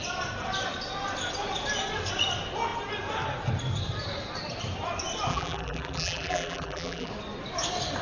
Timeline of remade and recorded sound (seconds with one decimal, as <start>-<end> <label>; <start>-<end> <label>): 0.0-5.3 recorded; 5.3-7.1 remade; 7.1-8.0 recorded